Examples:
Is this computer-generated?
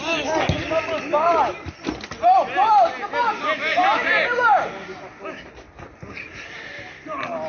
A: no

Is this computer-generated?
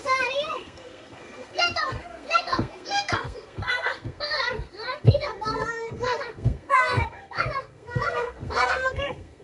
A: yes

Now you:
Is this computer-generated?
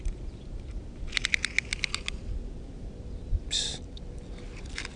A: no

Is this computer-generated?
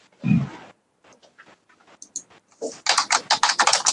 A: no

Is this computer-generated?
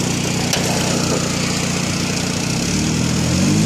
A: no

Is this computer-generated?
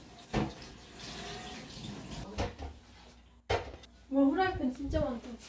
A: no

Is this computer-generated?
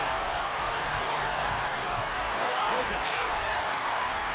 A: yes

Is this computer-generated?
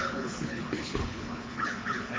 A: yes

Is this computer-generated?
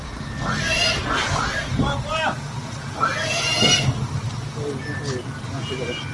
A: no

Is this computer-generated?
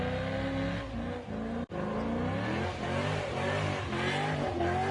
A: no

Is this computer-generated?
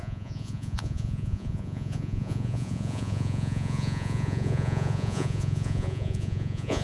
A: yes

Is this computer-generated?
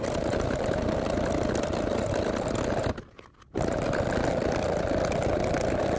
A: no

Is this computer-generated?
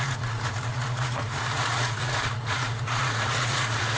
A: yes